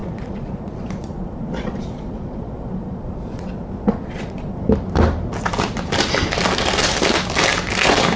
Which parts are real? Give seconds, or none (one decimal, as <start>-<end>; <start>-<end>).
4.6-8.2